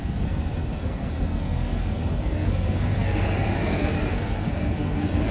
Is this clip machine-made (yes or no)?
yes